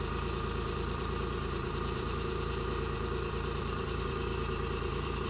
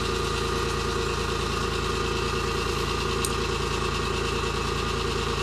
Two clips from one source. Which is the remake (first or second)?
first